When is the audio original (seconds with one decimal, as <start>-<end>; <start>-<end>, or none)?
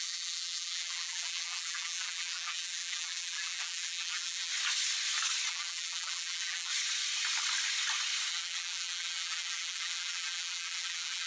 4.5-5.5; 6.7-8.3